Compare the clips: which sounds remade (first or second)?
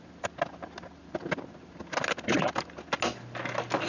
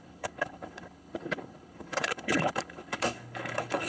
second